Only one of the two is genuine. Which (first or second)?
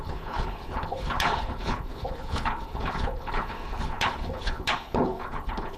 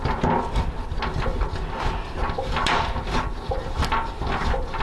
second